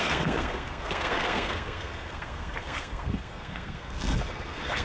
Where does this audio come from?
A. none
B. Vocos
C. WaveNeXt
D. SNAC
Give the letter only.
D